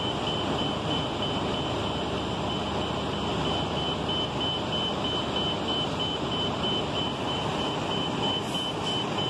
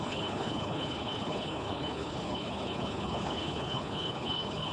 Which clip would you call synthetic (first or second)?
second